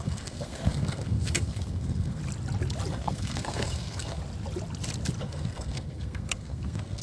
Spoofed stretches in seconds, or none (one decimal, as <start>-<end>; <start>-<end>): 0.0-2.2; 2.9-4.2; 5.2-7.0